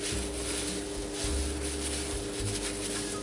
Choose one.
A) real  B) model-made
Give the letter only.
A